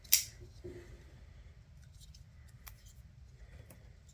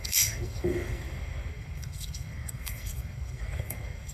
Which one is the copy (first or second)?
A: second